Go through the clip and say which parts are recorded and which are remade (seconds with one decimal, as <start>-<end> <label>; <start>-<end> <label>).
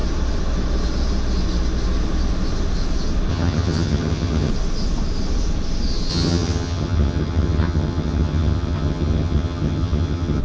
0.0-3.3 recorded; 3.3-4.5 remade; 4.5-6.1 recorded; 6.1-10.4 remade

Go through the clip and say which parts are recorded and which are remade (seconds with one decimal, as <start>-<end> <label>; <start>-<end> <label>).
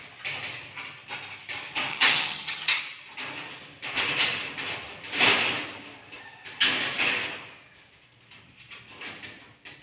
0.0-1.9 recorded; 1.9-2.8 remade; 2.8-9.8 recorded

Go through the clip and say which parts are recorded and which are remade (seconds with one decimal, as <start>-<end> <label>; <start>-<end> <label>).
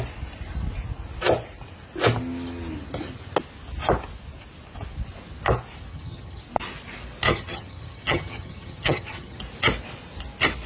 0.0-5.9 recorded; 5.9-6.4 remade; 6.4-7.3 recorded; 7.3-9.4 remade; 9.4-10.7 recorded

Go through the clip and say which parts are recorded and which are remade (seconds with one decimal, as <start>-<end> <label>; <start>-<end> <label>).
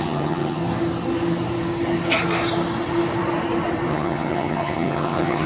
0.0-0.6 remade; 0.6-3.9 recorded; 3.9-5.5 remade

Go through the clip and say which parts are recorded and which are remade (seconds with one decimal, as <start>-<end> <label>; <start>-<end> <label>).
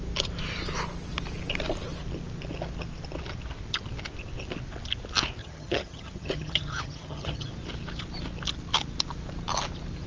0.0-5.4 recorded; 5.4-7.5 remade; 7.5-10.1 recorded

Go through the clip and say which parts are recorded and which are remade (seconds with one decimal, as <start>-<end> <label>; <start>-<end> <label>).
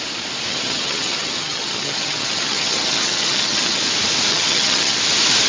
0.0-0.5 recorded; 0.5-3.8 remade; 3.8-4.3 recorded; 4.3-5.0 remade; 5.0-5.5 recorded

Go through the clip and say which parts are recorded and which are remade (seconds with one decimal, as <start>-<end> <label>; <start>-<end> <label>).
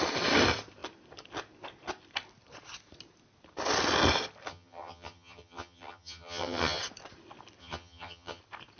0.0-4.5 recorded; 4.5-6.8 remade; 6.8-7.6 recorded; 7.6-8.4 remade; 8.4-8.8 recorded